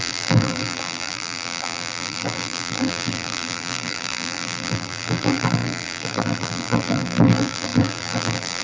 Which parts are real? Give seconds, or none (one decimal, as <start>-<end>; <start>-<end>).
none